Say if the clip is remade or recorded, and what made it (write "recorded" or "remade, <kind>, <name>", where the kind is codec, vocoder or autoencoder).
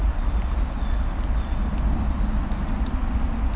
recorded